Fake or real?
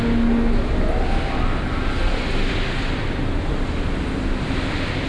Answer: real